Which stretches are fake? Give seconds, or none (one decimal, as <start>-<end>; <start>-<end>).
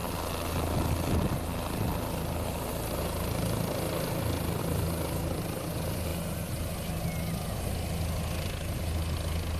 none